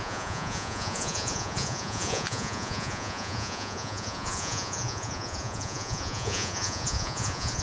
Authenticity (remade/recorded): remade